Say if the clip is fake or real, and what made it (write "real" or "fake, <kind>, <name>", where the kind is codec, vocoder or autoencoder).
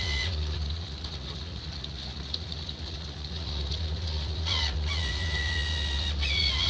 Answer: fake, vocoder, Vocos